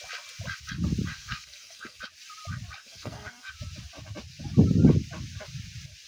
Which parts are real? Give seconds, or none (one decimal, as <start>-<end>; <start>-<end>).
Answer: 0.0-1.1; 2.0-2.8; 3.5-6.1